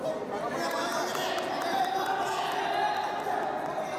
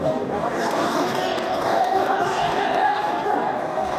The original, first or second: first